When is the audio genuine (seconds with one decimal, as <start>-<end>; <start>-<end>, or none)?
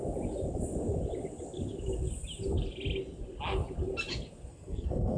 0.0-4.5